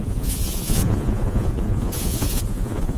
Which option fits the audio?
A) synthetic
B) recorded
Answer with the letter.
A